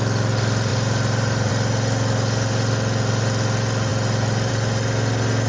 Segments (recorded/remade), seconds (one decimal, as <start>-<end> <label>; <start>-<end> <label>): 0.0-0.7 recorded; 0.7-1.5 remade; 1.5-5.5 recorded